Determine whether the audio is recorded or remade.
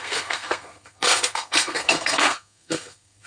remade